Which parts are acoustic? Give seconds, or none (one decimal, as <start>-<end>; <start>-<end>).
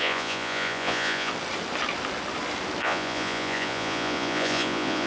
1.3-2.8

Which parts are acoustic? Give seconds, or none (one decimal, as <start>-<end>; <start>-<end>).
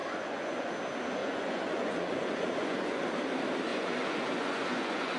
0.7-1.2; 3.0-3.7